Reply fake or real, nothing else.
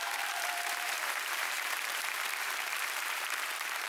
fake